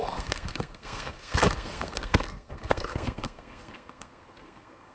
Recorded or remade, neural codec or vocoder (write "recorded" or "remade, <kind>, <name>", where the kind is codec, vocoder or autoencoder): remade, codec, SNAC